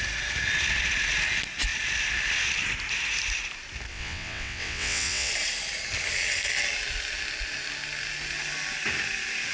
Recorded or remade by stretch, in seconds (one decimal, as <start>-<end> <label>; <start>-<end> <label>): 0.0-3.9 recorded; 3.9-5.3 remade; 5.3-9.5 recorded